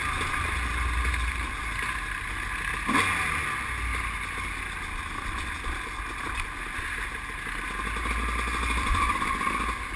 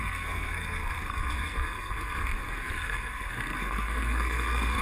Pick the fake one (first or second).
second